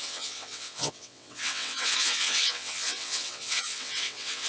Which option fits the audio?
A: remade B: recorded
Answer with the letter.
A